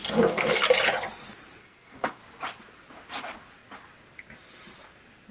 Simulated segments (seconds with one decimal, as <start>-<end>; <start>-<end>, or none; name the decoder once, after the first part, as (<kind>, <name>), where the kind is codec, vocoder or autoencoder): 0.0-0.6 (codec, SNAC); 1.6-2.2